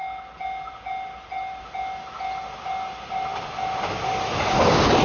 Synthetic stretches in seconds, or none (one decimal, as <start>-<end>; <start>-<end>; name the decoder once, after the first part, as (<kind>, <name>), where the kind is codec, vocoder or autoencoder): none

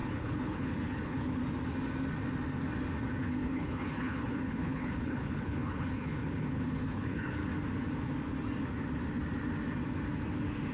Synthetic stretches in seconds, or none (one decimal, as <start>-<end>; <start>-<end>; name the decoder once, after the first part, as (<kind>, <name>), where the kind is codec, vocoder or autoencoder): 0.0-1.4 (codec, HILCodec); 3.2-7.4

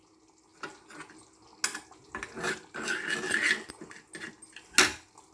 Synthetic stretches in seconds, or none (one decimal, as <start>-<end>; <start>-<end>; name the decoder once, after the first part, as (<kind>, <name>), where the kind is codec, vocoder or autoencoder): none

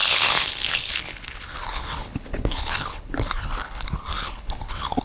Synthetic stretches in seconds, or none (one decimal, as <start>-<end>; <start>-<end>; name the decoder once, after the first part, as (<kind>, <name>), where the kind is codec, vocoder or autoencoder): 0.0-5.0 (codec, HILCodec)

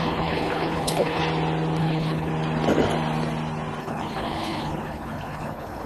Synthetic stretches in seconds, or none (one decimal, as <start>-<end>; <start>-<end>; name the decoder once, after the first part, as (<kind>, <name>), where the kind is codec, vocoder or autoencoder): 0.0-1.2 (codec, HILCodec); 1.8-2.3; 3.8-5.9